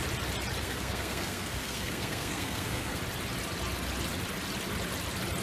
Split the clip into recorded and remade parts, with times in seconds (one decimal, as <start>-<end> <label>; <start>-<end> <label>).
0.0-0.6 recorded; 0.6-3.0 remade; 3.0-5.4 recorded